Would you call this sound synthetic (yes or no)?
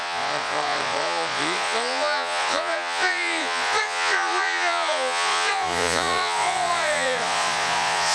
yes